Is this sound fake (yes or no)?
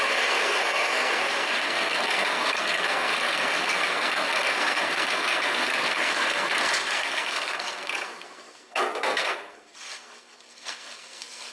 yes